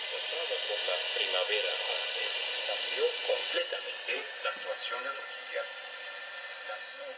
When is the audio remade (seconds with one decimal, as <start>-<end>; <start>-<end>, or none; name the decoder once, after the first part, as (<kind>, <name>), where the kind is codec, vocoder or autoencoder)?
3.2-4.4 (vocoder, WaveNeXt)